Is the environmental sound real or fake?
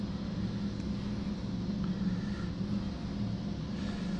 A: real